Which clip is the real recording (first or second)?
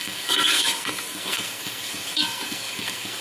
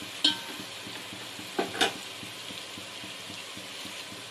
second